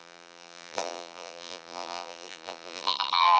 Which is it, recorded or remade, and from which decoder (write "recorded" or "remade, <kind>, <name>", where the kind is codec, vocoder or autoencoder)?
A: remade, vocoder, BigVGAN v2